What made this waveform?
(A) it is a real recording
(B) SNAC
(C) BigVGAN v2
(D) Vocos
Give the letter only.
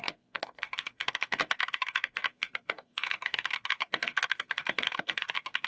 B